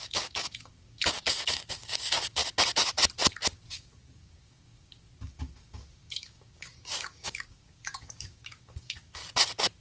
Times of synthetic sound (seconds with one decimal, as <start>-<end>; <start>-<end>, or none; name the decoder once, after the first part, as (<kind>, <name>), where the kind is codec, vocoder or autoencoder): 0.0-2.4 (codec, DAC); 3.7-9.2